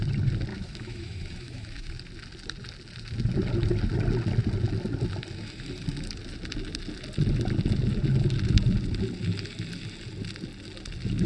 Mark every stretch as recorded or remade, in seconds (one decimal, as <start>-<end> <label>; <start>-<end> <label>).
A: 0.0-0.5 recorded; 0.5-1.9 remade; 1.9-11.3 recorded